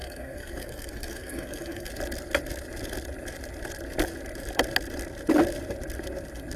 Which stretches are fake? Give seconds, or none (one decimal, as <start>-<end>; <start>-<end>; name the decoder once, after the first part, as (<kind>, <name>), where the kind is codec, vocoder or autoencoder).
0.0-1.9 (codec, SNAC)